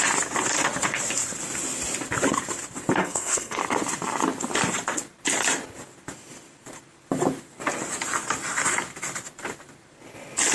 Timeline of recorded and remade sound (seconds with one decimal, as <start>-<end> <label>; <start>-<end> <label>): 0.0-3.0 recorded; 3.0-3.6 remade; 3.6-10.5 recorded